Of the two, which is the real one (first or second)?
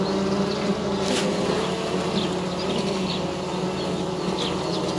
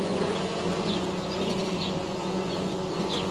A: first